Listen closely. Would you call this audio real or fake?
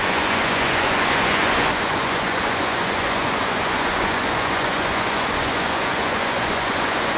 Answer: fake